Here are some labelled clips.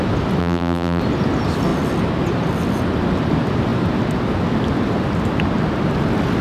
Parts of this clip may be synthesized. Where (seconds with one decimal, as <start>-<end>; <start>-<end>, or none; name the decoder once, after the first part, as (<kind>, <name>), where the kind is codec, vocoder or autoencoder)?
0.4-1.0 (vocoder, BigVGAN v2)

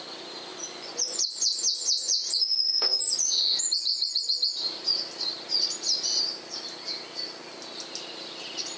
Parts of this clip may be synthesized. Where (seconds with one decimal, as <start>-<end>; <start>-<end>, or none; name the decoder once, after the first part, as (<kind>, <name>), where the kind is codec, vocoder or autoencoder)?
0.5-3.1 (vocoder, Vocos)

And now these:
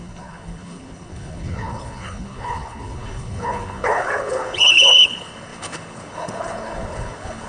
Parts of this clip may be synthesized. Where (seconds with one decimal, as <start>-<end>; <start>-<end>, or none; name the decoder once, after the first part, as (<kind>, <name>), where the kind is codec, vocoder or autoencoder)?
0.0-7.5 (codec, HILCodec)

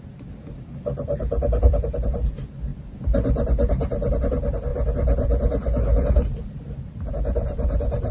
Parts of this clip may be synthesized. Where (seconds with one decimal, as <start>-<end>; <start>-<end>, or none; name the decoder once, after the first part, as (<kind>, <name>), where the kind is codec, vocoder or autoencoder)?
none

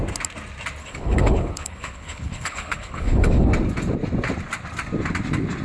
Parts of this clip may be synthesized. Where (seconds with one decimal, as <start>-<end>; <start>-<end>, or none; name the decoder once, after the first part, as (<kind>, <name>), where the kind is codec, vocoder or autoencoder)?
0.8-3.5 (codec, HILCodec)